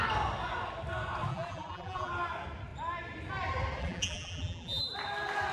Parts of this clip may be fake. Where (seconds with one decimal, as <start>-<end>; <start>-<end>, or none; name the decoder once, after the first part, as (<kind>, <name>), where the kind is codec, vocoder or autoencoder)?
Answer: 1.3-2.1 (vocoder, BigVGAN v2); 3.8-4.8